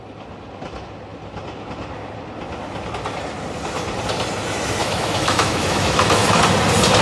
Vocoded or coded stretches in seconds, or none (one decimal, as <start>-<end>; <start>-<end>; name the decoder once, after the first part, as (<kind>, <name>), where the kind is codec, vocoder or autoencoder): 4.8-6.4 (autoencoder, DAC-VAE)